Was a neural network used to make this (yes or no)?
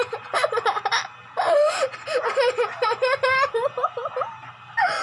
yes